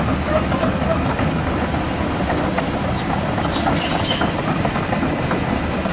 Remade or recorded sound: recorded